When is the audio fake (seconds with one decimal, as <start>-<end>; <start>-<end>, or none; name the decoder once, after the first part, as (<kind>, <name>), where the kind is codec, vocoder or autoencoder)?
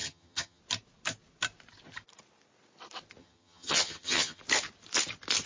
0.0-0.6 (vocoder, HiFi-GAN); 3.2-4.4